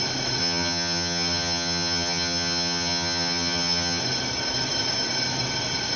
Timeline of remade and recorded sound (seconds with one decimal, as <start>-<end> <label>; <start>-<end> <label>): 0.0-0.4 recorded; 0.4-4.0 remade; 4.0-6.0 recorded